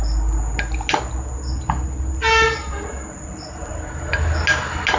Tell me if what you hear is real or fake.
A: real